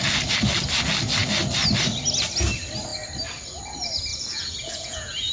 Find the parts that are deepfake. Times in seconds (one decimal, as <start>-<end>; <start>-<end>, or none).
4.1-5.3